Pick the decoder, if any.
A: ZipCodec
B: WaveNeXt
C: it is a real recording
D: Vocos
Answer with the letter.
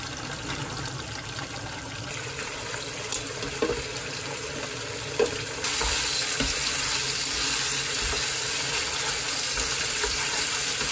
C